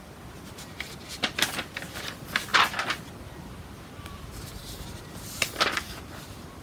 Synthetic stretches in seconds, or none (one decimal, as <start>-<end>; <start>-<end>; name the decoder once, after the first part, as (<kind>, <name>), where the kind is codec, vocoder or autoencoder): 0.0-2.5 (vocoder, BigVGAN v2); 3.1-4.6; 6.0-6.6